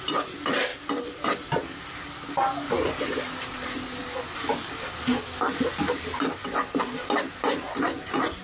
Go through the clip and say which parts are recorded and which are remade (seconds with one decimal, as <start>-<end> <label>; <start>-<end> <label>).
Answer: 0.0-0.7 recorded; 0.7-1.5 remade; 1.5-8.4 recorded